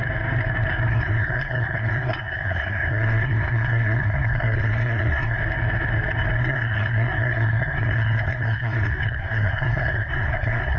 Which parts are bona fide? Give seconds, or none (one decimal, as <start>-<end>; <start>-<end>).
0.0-0.9; 5.4-6.4